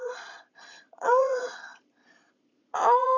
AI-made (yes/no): yes